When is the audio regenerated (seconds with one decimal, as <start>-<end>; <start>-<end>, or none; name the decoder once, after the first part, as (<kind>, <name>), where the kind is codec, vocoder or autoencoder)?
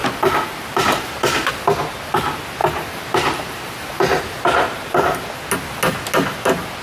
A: 0.0-1.5 (vocoder, BigVGAN v2); 2.6-4.2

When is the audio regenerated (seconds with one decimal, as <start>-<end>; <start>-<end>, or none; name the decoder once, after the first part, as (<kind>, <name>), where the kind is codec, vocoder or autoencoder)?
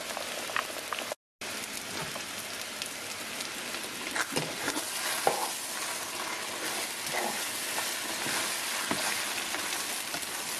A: none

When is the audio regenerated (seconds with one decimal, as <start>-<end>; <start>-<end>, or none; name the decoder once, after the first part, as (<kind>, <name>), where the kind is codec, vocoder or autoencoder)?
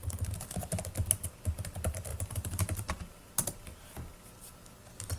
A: 0.0-0.5 (vocoder, BigVGAN v2); 2.1-3.3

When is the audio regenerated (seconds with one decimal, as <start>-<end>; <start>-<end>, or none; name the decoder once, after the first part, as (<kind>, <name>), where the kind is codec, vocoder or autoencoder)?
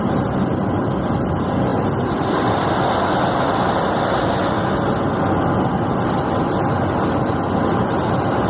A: 1.7-2.7 (vocoder, BigVGAN v2)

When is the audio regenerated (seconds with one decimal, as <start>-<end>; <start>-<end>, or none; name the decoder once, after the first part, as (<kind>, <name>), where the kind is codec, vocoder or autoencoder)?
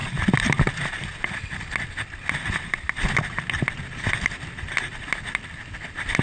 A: none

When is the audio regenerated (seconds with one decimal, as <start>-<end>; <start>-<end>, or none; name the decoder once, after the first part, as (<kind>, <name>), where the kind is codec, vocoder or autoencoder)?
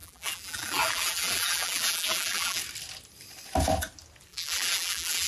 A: 0.0-2.6 (vocoder, BigVGAN v2); 4.3-5.3